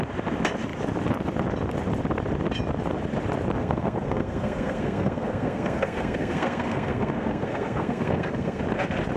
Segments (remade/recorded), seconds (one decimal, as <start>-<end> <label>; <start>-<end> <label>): 0.0-3.6 recorded; 3.6-8.6 remade; 8.6-9.2 recorded

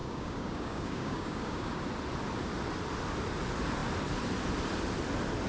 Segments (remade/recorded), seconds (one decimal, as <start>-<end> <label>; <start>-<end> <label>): 0.0-1.8 remade; 1.8-5.5 recorded

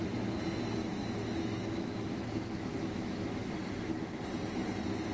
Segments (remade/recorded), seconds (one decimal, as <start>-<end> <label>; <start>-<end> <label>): 0.0-0.8 recorded; 0.8-3.5 remade; 3.5-5.1 recorded

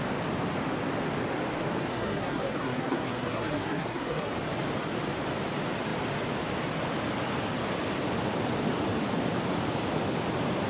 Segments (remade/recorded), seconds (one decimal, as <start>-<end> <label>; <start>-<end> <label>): 0.0-1.9 recorded; 1.9-4.3 remade; 4.3-10.7 recorded

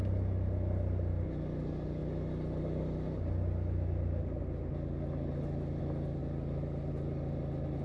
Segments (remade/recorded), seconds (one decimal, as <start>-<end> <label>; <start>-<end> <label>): 0.0-7.8 recorded

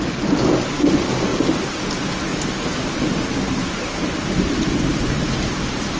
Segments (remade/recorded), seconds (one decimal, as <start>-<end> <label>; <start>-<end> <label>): 0.0-1.3 recorded; 1.3-1.8 remade; 1.8-2.3 recorded; 2.3-6.0 remade

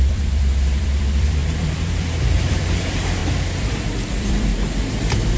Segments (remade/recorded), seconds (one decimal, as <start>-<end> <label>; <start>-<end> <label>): 0.0-3.2 remade; 3.2-4.1 recorded; 4.1-4.5 remade; 4.5-5.0 recorded; 5.0-5.4 remade

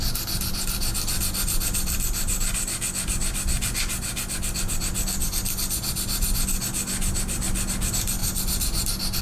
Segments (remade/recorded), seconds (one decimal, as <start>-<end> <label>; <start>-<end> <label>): 0.0-9.2 recorded